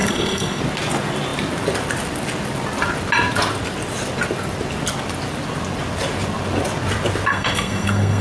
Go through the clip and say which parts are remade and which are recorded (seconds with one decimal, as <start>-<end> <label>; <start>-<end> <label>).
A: 0.0-0.6 remade; 0.6-7.3 recorded; 7.3-8.2 remade